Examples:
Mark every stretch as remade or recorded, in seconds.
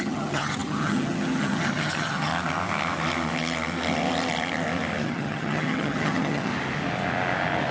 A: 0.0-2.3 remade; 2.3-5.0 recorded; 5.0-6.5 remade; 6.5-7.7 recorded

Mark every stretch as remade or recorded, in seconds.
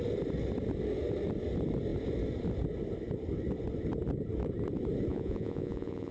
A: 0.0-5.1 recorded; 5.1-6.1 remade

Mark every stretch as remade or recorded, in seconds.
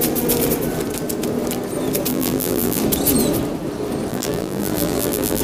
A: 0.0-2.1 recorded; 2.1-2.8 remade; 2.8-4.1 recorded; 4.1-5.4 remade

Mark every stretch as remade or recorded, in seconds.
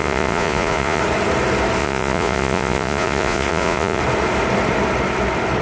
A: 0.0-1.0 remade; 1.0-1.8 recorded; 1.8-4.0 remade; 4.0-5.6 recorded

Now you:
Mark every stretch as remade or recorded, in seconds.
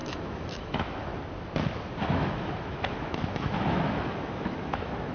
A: 0.0-1.1 remade; 1.1-2.1 recorded; 2.1-5.1 remade